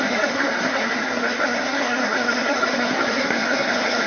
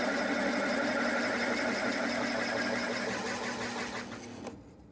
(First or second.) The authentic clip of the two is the second